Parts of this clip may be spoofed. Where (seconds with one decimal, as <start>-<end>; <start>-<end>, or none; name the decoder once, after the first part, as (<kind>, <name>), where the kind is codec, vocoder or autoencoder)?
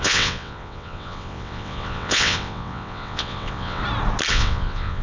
0.0-3.8 (vocoder, WaveNeXt); 4.3-5.0